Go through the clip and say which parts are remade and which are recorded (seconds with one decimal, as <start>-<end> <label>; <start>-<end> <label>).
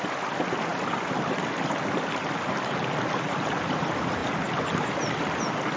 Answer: 0.0-5.8 recorded